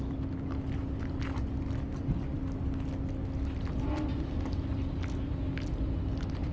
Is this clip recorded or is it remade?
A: recorded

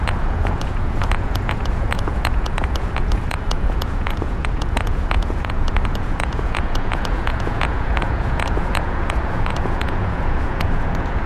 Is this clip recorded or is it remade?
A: remade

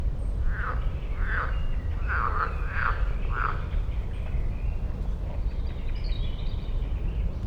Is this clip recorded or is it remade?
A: remade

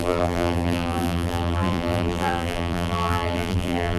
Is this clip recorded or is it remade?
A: remade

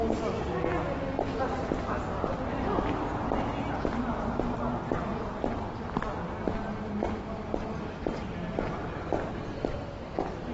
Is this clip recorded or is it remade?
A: recorded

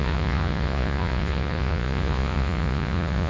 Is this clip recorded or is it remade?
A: remade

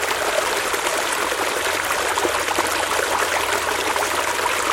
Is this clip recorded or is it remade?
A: recorded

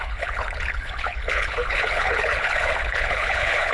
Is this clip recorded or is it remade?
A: remade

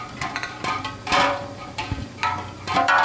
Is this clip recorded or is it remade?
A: remade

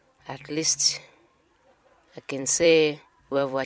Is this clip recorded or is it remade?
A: remade